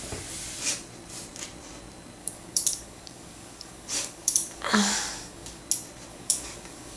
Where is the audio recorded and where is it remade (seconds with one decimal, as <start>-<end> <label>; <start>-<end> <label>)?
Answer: 0.0-2.2 recorded; 2.2-5.6 remade; 5.6-6.1 recorded; 6.1-7.0 remade